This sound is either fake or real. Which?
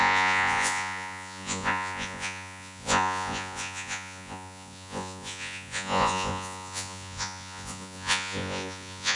fake